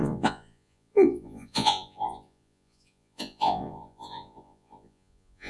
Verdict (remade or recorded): remade